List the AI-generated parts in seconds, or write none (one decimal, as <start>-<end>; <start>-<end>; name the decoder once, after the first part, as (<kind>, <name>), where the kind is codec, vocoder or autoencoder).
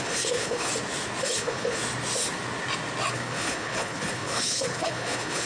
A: 0.0-0.7 (codec, HILCodec); 1.2-1.8; 3.1-5.5